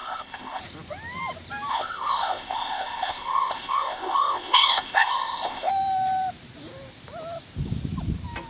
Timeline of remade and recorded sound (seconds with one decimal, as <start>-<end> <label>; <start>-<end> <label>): 0.0-0.6 remade; 0.6-1.7 recorded; 1.7-5.7 remade; 5.7-8.5 recorded